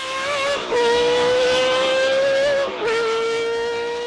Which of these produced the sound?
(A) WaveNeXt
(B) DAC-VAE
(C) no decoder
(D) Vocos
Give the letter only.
B